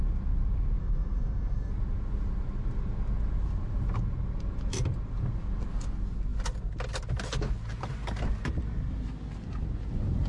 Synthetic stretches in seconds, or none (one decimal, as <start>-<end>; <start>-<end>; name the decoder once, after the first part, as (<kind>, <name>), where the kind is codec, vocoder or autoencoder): 0.8-1.7 (codec, SNAC)